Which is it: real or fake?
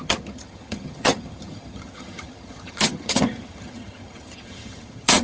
fake